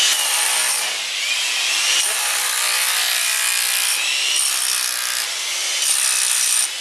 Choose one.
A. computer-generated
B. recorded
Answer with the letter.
B